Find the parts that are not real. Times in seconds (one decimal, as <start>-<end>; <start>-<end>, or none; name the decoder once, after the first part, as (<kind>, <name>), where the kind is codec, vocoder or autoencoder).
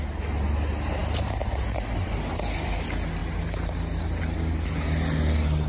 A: none